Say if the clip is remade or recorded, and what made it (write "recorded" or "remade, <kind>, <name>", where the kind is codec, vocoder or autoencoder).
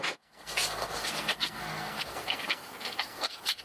remade, codec, SNAC